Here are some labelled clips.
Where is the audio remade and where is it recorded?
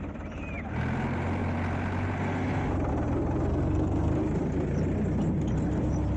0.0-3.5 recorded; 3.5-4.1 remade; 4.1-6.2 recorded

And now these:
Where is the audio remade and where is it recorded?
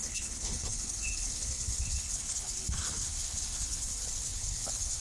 0.0-5.0 remade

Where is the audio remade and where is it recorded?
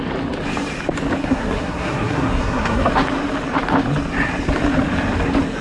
0.0-1.2 recorded; 1.2-2.9 remade; 2.9-5.6 recorded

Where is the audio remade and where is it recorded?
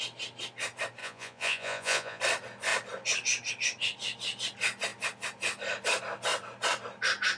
0.0-1.0 recorded; 1.0-2.2 remade; 2.2-7.4 recorded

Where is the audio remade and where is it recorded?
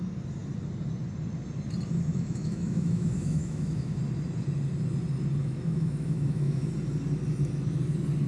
0.0-2.1 recorded; 2.1-4.0 remade; 4.0-5.4 recorded; 5.4-6.7 remade; 6.7-8.3 recorded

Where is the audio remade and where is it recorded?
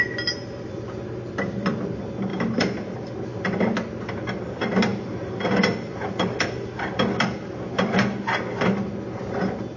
0.0-2.3 recorded; 2.3-3.9 remade; 3.9-4.9 recorded; 4.9-8.9 remade; 8.9-9.8 recorded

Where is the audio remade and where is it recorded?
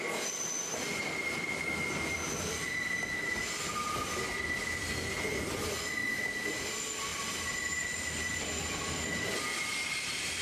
0.0-7.1 recorded; 7.1-8.0 remade; 8.0-10.4 recorded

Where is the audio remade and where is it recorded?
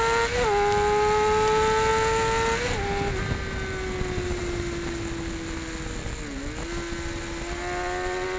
0.0-8.4 recorded